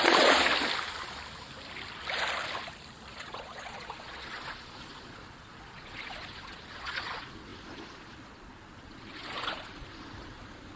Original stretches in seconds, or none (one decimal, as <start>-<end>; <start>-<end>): 0.5-3.1